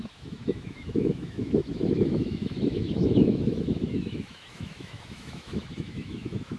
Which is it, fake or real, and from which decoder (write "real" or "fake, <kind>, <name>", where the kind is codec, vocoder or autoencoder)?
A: fake, autoencoder, DAC-VAE